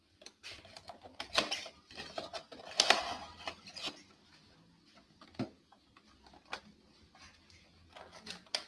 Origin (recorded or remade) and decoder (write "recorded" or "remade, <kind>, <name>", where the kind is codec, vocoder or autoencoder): recorded